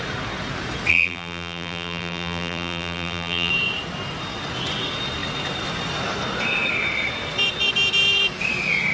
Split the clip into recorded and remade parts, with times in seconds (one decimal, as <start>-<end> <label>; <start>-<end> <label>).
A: 0.0-0.9 recorded; 0.9-3.5 remade; 3.5-8.9 recorded